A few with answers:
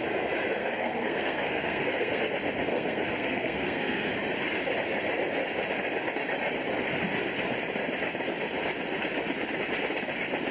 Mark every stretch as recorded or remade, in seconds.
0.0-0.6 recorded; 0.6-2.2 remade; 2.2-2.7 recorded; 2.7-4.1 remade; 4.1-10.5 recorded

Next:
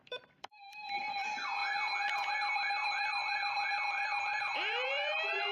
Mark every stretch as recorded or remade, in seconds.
0.0-1.6 remade; 1.6-2.3 recorded; 2.3-3.2 remade; 3.2-3.8 recorded; 3.8-5.5 remade

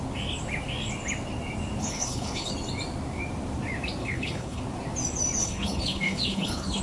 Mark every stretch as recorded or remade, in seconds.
0.0-1.8 recorded; 1.8-2.5 remade; 2.5-4.0 recorded; 4.0-4.6 remade; 4.6-5.4 recorded; 5.4-6.8 remade